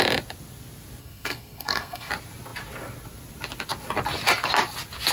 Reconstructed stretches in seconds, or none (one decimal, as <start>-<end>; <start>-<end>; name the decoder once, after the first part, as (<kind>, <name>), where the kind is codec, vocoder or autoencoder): 1.0-2.1 (codec, SNAC)